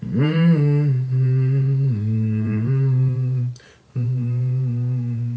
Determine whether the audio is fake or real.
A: fake